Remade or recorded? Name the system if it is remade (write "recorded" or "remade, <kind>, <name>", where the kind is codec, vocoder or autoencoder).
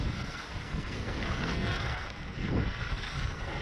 remade, codec, SNAC